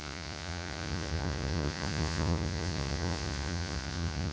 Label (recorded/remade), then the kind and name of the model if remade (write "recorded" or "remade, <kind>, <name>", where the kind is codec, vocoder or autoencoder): remade, vocoder, Vocos